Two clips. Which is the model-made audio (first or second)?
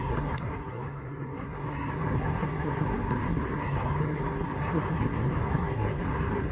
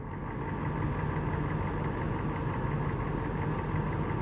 first